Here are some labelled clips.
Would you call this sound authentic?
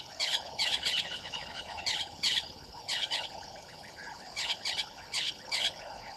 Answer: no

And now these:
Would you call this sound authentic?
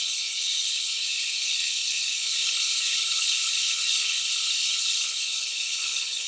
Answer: no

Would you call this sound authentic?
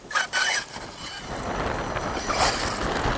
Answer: yes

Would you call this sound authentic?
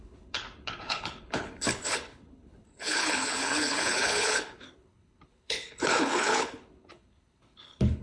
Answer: no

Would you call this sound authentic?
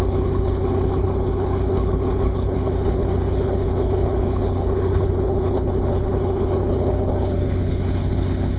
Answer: no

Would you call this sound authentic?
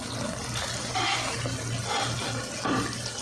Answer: yes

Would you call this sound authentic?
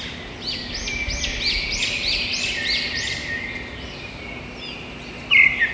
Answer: yes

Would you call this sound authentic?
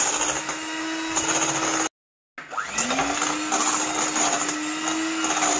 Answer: yes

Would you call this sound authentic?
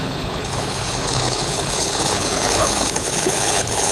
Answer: no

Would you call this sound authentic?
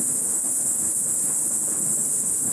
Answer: no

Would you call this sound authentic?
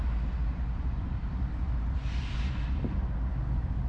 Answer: yes